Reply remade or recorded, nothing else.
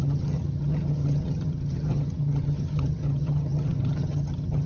remade